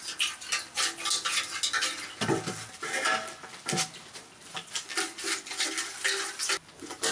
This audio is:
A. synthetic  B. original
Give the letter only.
B